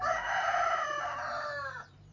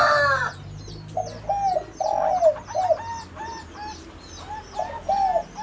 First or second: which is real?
second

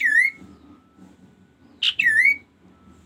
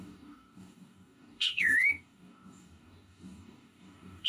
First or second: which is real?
first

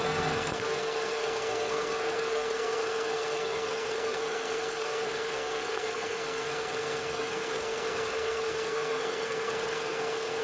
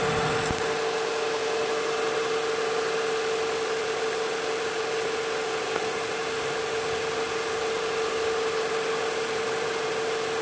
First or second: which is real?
second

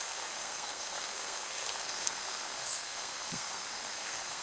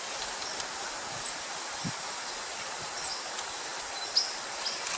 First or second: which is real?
second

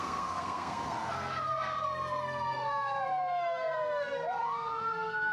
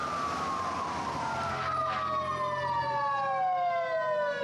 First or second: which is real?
second